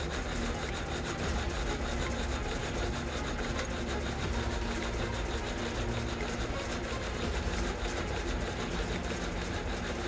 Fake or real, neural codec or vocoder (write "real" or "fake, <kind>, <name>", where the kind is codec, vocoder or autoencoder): real